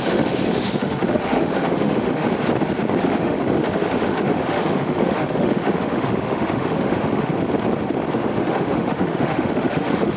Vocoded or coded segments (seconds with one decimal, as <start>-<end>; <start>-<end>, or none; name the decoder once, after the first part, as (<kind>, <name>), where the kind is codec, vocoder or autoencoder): 0.0-2.4 (autoencoder, DAC-VAE); 3.0-7.3; 8.1-10.2